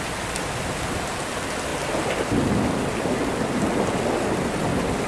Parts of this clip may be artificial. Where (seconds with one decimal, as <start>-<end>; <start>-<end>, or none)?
none